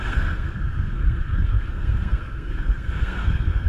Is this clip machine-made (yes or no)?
yes